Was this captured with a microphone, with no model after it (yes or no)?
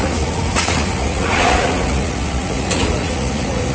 no